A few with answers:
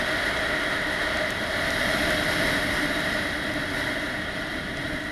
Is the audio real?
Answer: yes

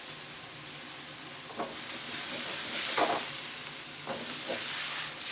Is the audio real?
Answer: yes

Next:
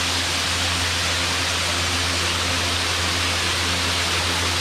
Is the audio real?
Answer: yes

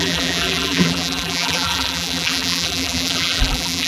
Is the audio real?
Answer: no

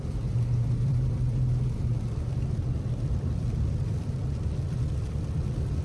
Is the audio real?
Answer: no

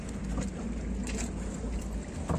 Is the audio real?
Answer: yes